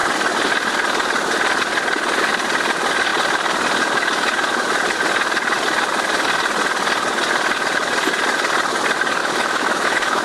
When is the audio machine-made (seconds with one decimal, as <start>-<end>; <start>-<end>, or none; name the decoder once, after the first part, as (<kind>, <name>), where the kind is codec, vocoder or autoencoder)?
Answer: 9.2-10.2 (autoencoder, DAC-VAE)